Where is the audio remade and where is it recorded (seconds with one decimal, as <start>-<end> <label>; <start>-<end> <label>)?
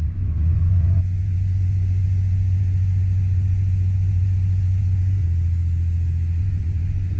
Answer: 0.0-5.2 remade; 5.2-6.4 recorded; 6.4-7.2 remade